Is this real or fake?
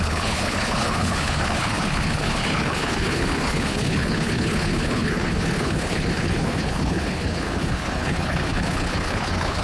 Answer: fake